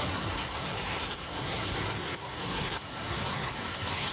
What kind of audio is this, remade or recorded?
remade